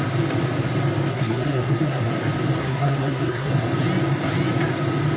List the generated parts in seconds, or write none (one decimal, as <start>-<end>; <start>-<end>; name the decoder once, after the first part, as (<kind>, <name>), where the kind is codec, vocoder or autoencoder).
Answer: 1.1-2.1 (codec, SNAC); 2.6-3.5

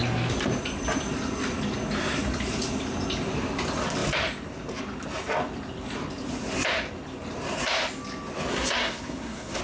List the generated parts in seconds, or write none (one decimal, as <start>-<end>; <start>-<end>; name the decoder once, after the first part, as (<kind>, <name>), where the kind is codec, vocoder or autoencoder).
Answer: 8.5-9.6 (codec, SNAC)

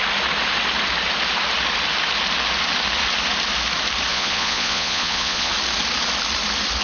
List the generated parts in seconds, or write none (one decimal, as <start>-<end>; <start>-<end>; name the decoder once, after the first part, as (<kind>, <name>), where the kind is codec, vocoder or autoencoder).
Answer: 4.1-5.5 (vocoder, Vocos)

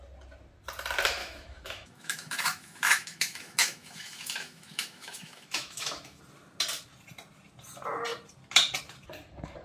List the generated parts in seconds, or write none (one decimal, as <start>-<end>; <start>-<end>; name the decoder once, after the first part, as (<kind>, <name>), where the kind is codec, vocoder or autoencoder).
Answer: 1.2-6.2 (autoencoder, DAC-VAE)

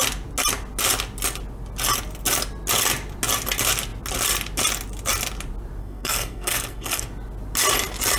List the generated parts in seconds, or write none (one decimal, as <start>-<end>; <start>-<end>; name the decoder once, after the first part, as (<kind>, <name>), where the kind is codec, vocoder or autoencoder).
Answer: 5.8-7.0 (codec, SNAC)